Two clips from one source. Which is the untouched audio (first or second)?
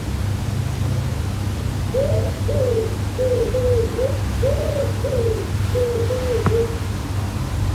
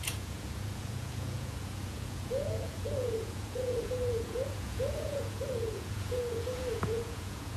first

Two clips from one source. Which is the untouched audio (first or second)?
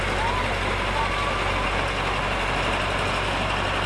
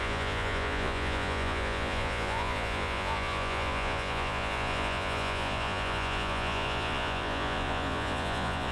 first